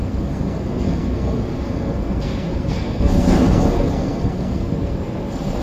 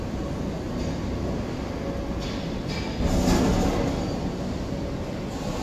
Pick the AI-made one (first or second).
first